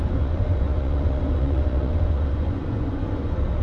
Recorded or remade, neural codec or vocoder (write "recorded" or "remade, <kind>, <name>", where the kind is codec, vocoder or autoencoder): remade, vocoder, Vocos